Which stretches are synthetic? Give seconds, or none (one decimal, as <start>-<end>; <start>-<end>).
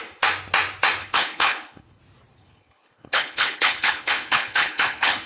1.0-2.0; 2.4-5.3